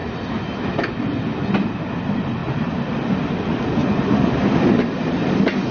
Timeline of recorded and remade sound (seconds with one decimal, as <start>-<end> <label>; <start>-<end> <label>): 0.0-1.2 remade; 1.2-2.4 recorded; 2.4-3.3 remade; 3.3-3.8 recorded; 3.8-4.4 remade; 4.4-5.7 recorded